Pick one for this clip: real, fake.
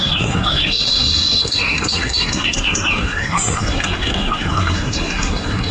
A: fake